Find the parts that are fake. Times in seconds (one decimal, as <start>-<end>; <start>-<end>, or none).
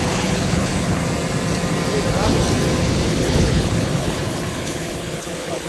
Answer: 0.0-1.0; 2.8-5.7